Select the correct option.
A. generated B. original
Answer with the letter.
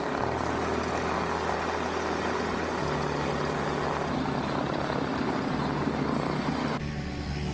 B